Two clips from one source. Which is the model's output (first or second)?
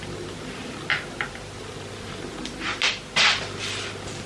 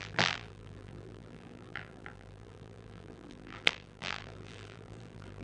second